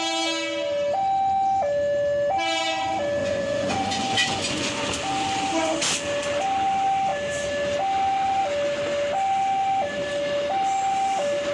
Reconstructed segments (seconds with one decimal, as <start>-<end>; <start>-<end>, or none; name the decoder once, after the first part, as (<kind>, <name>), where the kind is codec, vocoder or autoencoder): 3.2-4.7 (vocoder, Vocos)